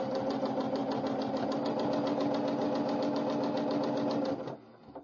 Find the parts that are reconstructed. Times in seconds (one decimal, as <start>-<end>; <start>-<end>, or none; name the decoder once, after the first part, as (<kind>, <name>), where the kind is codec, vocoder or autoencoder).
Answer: none